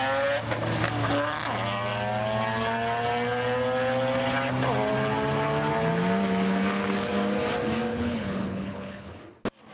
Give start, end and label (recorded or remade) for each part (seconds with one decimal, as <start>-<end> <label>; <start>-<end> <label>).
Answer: 0.0-7.9 recorded; 7.9-9.2 remade; 9.2-9.7 recorded